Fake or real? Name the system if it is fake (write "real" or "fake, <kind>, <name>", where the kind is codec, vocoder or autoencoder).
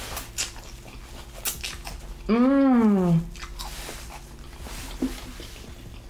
real